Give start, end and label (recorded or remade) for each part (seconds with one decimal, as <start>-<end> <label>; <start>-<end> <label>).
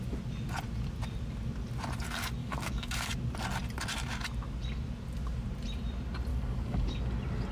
0.0-2.4 recorded; 2.4-3.1 remade; 3.1-6.3 recorded; 6.3-7.0 remade; 7.0-7.5 recorded